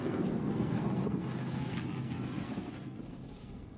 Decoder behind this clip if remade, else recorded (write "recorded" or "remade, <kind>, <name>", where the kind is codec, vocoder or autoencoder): remade, codec, SNAC